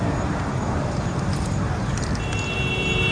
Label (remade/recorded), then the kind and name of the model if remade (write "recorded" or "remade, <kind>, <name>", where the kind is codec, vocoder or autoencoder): remade, vocoder, BigVGAN v2